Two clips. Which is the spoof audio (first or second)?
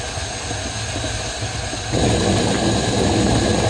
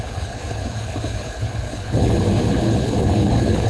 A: second